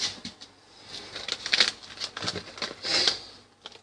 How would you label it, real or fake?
real